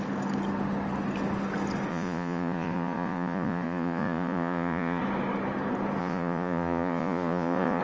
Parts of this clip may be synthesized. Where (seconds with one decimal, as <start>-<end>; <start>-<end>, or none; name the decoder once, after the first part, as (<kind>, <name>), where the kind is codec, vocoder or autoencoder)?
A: 1.9-5.0 (vocoder, Vocos); 6.0-7.8